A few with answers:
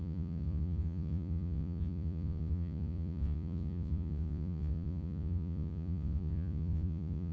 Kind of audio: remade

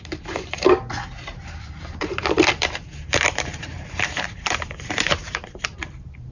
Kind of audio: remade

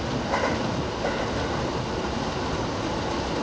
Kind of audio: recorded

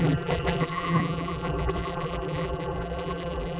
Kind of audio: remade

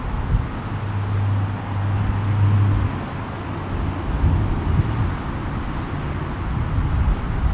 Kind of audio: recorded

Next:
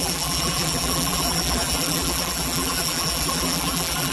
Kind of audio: remade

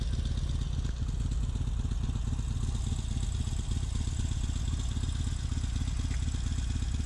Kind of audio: recorded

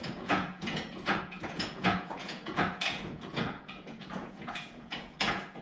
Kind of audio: remade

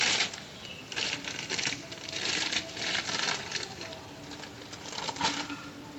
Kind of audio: remade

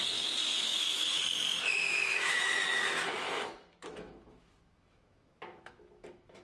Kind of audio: remade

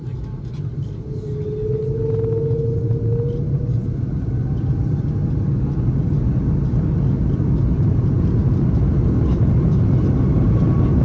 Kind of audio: recorded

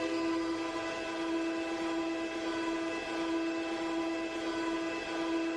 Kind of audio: recorded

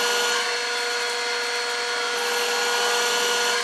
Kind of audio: recorded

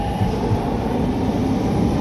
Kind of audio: recorded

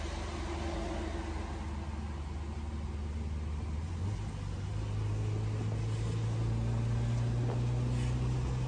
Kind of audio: recorded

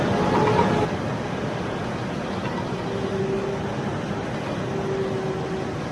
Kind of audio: recorded